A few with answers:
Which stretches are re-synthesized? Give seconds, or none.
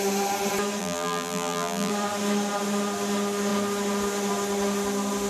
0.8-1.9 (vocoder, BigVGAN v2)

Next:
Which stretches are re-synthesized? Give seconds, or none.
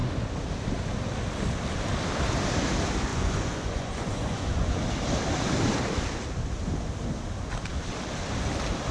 3.1-4.8 (vocoder, Vocos)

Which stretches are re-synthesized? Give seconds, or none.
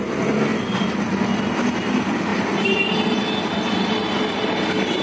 none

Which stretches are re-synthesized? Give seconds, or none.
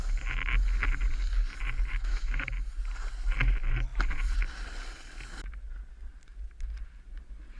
1.9-2.5 (autoencoder, DAC-VAE)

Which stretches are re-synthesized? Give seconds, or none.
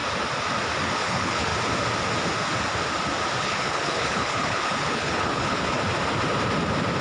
0.8-1.5 (codec, HILCodec); 3.4-5.8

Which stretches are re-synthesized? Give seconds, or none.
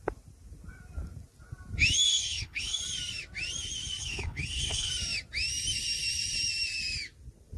2.1-2.8 (codec, HILCodec); 4.0-4.9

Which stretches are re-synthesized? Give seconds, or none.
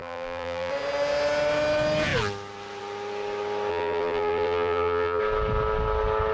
0.0-0.7 (vocoder, BigVGAN v2); 3.7-5.2